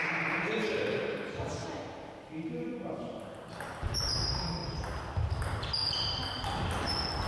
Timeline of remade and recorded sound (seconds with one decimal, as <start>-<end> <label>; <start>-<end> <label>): 0.0-7.3 recorded